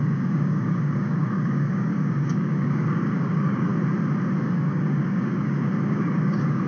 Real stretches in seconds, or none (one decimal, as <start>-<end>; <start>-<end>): 3.7-4.4